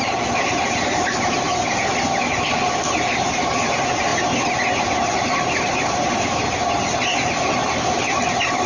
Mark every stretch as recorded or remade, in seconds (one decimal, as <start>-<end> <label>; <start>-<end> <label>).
0.0-8.7 recorded